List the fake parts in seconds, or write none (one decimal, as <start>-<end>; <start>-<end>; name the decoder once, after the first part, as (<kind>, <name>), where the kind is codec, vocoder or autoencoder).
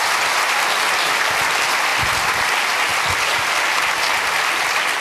2.9-3.5 (vocoder, BigVGAN v2)